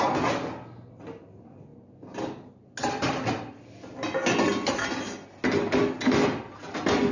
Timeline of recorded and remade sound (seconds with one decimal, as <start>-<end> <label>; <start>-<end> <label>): 0.0-7.1 recorded